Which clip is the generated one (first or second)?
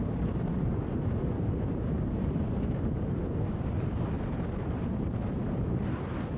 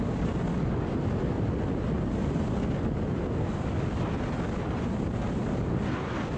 first